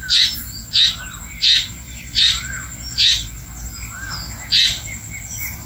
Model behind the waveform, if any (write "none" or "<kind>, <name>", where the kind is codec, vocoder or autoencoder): none